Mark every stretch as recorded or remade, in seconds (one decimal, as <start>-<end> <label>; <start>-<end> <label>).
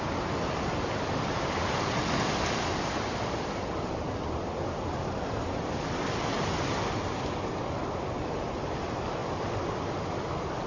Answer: 0.0-10.7 recorded